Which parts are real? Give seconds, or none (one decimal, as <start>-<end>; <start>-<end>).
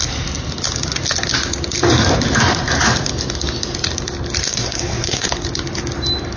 0.0-4.4; 5.3-6.4